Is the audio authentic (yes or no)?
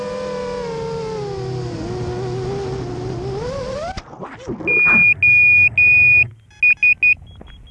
yes